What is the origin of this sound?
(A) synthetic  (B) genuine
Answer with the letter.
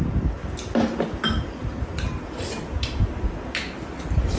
B